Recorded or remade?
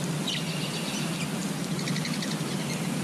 recorded